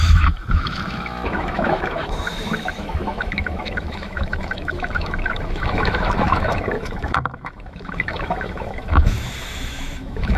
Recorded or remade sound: remade